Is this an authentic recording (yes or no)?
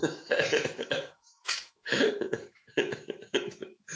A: no